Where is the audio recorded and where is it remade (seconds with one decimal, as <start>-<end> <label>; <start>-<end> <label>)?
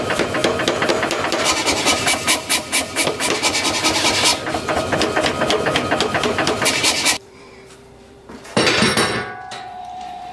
0.0-0.4 remade; 0.4-0.9 recorded; 0.9-4.3 remade; 4.3-6.1 recorded; 6.1-10.3 remade